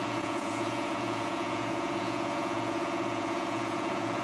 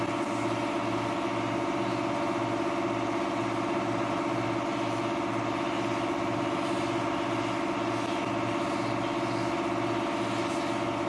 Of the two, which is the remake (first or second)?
first